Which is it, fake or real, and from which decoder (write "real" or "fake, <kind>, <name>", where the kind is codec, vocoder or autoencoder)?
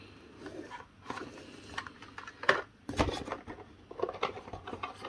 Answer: real